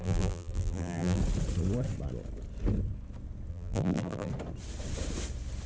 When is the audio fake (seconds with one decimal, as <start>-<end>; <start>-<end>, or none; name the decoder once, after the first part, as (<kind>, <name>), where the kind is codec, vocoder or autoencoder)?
0.0-1.2 (vocoder, BigVGAN v2); 3.5-4.3